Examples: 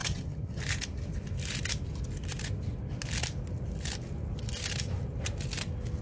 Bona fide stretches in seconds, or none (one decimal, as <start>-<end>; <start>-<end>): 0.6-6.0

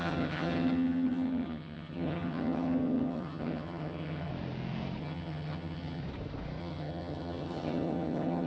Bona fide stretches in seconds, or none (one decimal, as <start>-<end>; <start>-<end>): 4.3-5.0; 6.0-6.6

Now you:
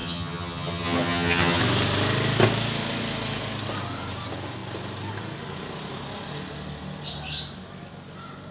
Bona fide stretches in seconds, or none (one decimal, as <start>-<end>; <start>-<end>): 1.6-8.5

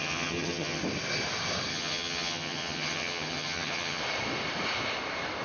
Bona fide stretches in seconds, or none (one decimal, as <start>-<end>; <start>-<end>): 0.8-1.7; 4.0-5.4

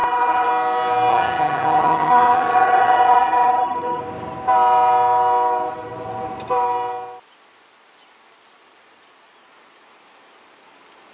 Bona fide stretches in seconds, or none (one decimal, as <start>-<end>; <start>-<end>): 0.5-1.1; 4.0-11.1

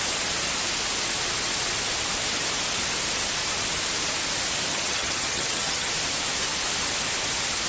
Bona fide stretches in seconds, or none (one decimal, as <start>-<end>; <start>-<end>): 0.0-4.7; 5.9-7.7

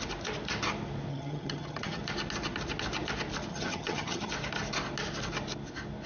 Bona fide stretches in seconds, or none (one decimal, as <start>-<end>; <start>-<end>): 0.0-1.1; 2.0-3.5; 4.3-6.1

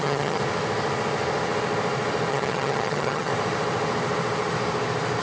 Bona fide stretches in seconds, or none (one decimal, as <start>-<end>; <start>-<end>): 0.4-2.3; 3.3-5.2